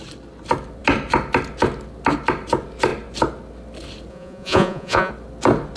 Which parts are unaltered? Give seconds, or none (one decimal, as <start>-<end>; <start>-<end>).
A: 0.0-4.1; 5.1-5.8